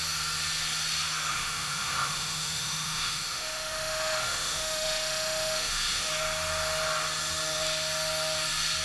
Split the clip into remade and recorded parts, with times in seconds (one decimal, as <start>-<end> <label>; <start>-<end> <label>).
0.0-1.3 recorded; 1.3-6.1 remade; 6.1-8.8 recorded